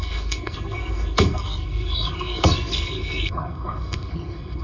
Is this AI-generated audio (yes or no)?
yes